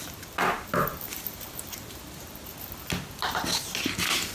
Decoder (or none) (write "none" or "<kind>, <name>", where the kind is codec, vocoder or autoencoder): none